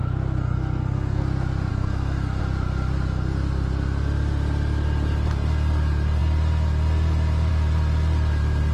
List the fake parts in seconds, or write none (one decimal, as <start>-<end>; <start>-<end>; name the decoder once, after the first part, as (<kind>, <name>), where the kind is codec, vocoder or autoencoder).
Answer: 0.4-1.2 (codec, SNAC); 1.7-2.4